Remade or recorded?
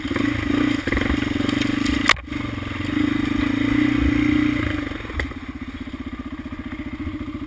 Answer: recorded